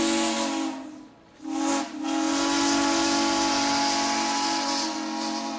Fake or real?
real